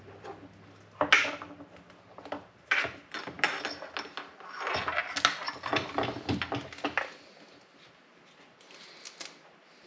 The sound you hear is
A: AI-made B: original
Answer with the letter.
B